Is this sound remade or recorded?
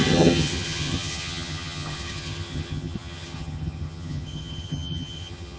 remade